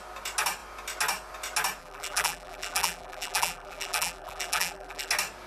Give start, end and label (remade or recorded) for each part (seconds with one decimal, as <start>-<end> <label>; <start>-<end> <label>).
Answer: 0.0-1.8 recorded; 1.8-5.1 remade; 5.1-5.5 recorded